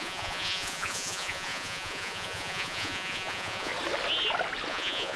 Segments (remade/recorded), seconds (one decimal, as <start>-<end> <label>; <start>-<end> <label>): 0.0-3.7 remade; 3.7-4.7 recorded; 4.7-5.2 remade